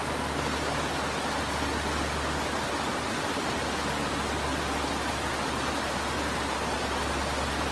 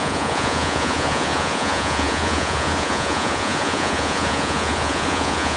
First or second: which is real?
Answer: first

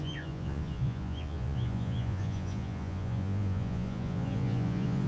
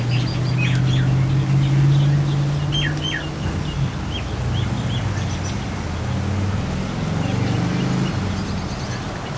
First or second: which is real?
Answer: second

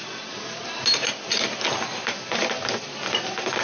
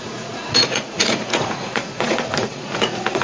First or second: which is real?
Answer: first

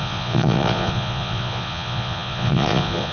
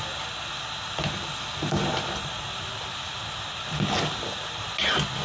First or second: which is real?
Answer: second